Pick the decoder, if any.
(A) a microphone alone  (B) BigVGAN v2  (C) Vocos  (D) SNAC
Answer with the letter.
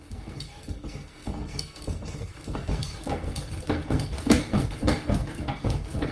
D